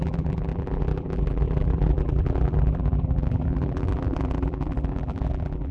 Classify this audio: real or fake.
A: fake